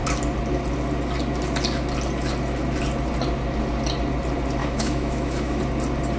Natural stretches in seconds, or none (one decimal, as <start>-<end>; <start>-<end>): 0.0-4.6; 5.6-6.2